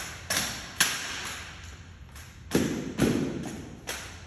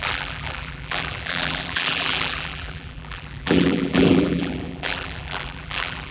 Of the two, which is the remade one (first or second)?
second